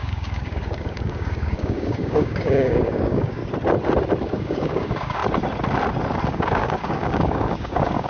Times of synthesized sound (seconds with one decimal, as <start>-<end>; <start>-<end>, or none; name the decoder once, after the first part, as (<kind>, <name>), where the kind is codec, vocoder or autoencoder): 0.0-3.4 (codec, DAC); 4.2-5.2; 6.3-8.1